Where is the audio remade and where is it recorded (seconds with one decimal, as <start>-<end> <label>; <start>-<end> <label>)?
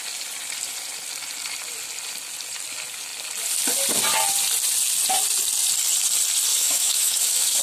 0.0-6.5 recorded; 6.5-7.6 remade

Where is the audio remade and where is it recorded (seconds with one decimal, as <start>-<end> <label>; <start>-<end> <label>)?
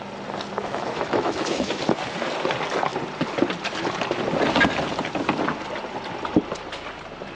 0.0-0.6 recorded; 0.6-1.8 remade; 1.8-7.4 recorded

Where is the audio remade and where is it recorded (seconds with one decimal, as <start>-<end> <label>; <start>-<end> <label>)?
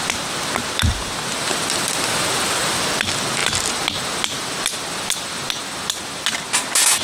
0.0-7.0 recorded